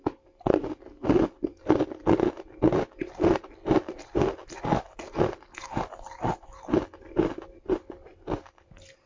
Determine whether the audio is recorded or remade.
recorded